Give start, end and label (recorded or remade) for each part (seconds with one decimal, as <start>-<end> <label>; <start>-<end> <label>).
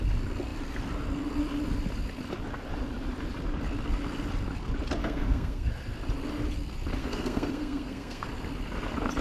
0.0-5.0 recorded; 5.0-5.7 remade; 5.7-7.0 recorded; 7.0-8.3 remade; 8.3-9.2 recorded